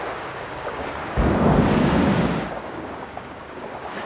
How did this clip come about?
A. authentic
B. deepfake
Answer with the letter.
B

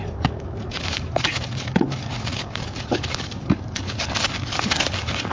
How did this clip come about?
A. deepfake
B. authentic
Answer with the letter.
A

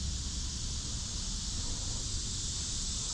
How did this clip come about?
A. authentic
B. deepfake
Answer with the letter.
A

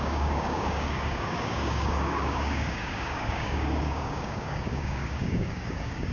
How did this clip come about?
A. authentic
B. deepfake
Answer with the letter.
B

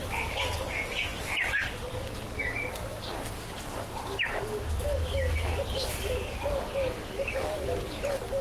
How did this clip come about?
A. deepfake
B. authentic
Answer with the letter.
A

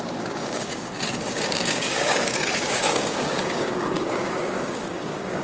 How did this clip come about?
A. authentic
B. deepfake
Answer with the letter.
B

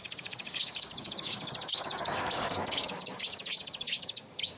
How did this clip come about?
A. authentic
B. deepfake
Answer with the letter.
B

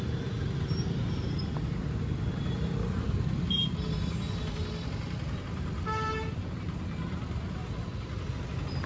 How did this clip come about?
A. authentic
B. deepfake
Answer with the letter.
A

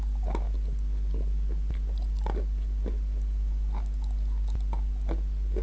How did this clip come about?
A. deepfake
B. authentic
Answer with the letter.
B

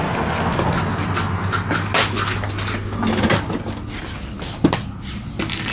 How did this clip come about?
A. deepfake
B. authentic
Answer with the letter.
B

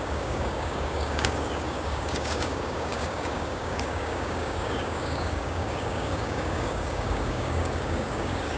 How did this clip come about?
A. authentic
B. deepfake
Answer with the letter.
B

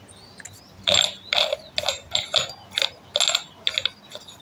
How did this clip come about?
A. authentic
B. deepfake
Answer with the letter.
A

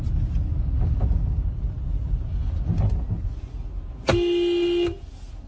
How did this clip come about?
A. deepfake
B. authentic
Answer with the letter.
B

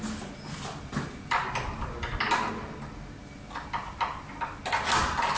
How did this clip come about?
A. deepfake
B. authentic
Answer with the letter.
B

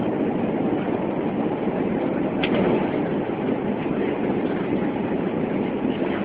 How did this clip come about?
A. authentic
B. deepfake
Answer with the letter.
A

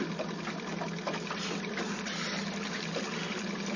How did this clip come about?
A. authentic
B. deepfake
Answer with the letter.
A